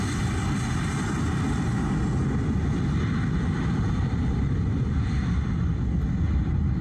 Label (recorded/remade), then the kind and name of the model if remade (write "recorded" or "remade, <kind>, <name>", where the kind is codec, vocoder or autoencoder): recorded